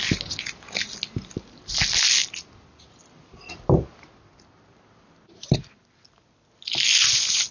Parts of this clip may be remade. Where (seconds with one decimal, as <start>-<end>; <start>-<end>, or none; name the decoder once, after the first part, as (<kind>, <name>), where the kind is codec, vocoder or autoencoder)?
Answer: none